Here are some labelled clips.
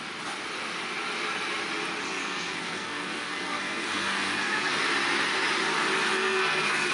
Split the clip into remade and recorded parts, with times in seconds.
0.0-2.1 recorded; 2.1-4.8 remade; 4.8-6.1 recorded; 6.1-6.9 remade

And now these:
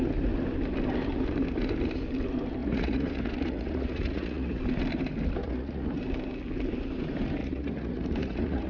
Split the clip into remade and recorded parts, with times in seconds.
0.0-2.6 recorded; 2.6-4.6 remade; 4.6-5.4 recorded; 5.4-6.0 remade; 6.0-7.4 recorded; 7.4-8.7 remade

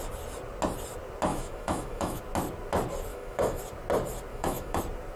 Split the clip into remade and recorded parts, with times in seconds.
0.0-1.3 recorded; 1.3-2.2 remade; 2.2-3.1 recorded; 3.1-3.6 remade; 3.6-4.3 recorded; 4.3-4.8 remade; 4.8-5.2 recorded

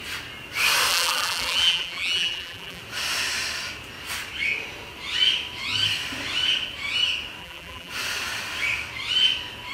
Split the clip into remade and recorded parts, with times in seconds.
0.0-0.9 recorded; 0.9-2.8 remade; 2.8-7.4 recorded; 7.4-7.9 remade; 7.9-9.7 recorded

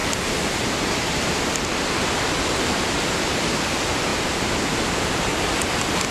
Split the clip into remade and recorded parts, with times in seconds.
0.0-2.5 recorded; 2.5-4.1 remade; 4.1-4.7 recorded; 4.7-5.3 remade; 5.3-6.1 recorded

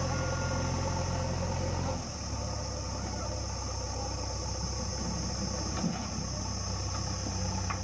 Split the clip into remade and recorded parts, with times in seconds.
0.0-7.8 recorded